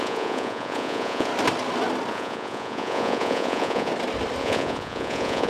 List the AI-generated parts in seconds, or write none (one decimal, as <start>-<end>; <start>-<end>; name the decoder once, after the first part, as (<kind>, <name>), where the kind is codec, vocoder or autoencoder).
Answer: 0.0-1.3 (vocoder, Vocos); 2.1-3.9; 4.4-5.5